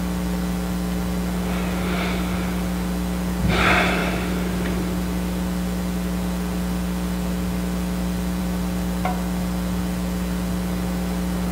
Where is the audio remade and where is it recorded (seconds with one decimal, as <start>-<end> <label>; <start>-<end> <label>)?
0.0-4.0 recorded; 4.0-8.4 remade; 8.4-11.5 recorded